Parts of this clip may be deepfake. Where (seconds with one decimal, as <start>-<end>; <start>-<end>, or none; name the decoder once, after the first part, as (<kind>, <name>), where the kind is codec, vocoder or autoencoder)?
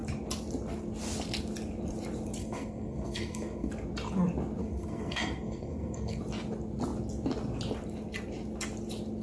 2.4-3.7 (codec, SNAC); 4.6-6.2